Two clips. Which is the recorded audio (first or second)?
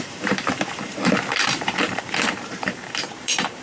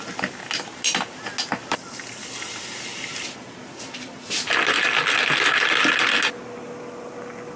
second